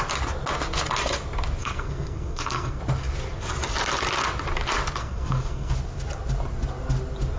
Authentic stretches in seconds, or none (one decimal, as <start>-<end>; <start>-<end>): 0.0-1.6; 2.8-5.0; 5.7-7.4